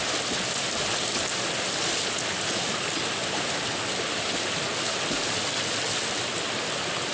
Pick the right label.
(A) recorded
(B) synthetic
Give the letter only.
A